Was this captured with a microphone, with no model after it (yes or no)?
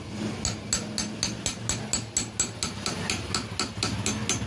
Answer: yes